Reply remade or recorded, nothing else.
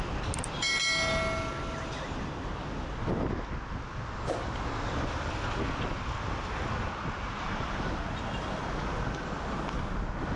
recorded